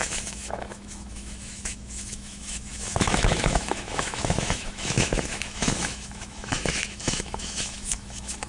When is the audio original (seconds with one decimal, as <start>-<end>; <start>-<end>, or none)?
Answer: none